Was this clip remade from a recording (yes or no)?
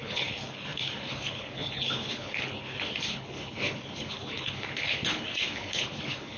yes